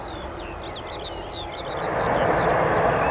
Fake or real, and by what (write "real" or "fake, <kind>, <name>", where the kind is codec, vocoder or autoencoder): real